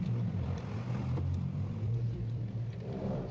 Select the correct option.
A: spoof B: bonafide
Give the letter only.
A